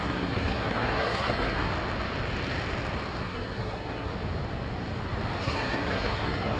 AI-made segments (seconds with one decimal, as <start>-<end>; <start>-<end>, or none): 0.0-1.7; 3.2-4.1; 5.4-6.6